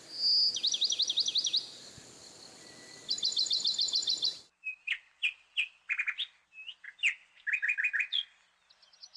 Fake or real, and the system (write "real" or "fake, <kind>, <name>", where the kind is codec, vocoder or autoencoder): real